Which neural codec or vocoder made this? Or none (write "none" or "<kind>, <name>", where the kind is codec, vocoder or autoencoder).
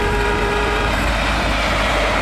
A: vocoder, BigVGAN v2